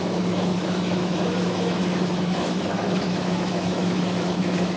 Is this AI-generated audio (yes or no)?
yes